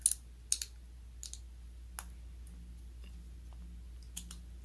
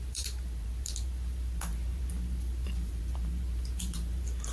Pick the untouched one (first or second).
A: first